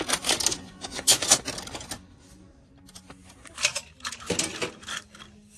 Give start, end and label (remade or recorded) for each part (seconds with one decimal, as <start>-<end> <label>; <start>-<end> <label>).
0.0-0.5 recorded; 0.5-1.2 remade; 1.2-5.6 recorded